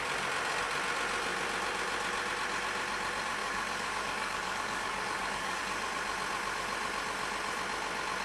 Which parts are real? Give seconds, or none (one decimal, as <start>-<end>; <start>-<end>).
0.0-3.4; 5.6-8.2

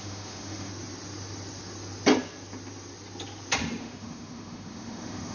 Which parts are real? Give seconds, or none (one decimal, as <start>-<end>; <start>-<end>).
0.7-3.8

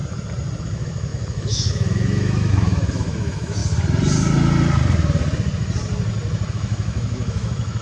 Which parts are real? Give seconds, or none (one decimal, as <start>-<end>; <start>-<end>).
0.0-0.6; 3.6-6.5

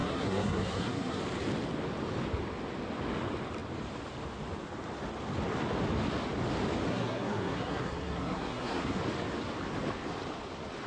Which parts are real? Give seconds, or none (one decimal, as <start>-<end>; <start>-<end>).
1.2-6.9; 9.0-10.9